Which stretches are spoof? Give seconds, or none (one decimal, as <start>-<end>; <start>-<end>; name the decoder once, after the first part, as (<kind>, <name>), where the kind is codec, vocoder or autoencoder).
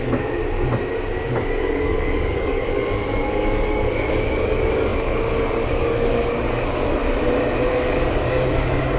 0.0-0.4 (codec, DAC); 1.3-7.0; 7.7-9.0